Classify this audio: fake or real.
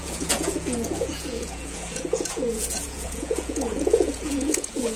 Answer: fake